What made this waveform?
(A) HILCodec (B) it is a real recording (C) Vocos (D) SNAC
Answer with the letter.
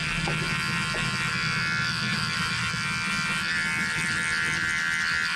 B